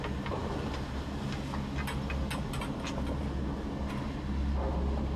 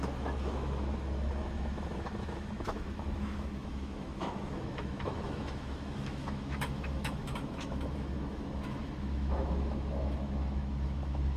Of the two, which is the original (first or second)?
first